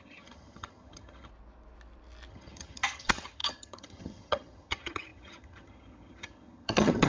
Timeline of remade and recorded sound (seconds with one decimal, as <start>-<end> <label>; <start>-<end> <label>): 0.0-1.3 remade; 1.3-2.3 recorded; 2.3-7.1 remade